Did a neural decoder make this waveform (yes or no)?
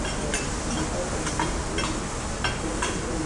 no